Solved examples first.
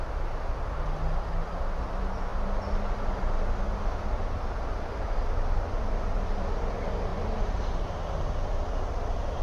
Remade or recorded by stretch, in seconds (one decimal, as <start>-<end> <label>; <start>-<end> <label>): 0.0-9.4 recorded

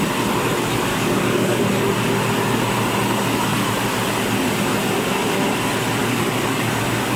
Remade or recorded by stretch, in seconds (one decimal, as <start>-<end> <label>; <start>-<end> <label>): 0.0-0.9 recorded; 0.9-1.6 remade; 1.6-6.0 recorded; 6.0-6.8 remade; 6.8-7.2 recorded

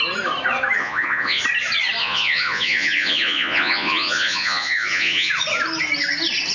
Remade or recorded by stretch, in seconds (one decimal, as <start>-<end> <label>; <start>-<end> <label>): 0.0-0.8 recorded; 0.8-1.4 remade; 1.4-2.0 recorded; 2.0-5.3 remade; 5.3-6.5 recorded